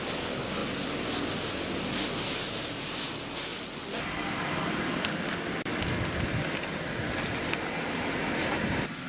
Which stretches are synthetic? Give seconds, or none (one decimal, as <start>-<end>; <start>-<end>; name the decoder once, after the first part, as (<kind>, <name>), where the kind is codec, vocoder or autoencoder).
none